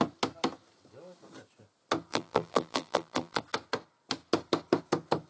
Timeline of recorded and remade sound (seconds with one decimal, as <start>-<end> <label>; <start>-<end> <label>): 0.0-2.1 recorded; 2.1-3.4 remade; 3.4-5.3 recorded